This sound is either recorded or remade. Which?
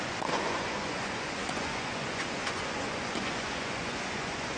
remade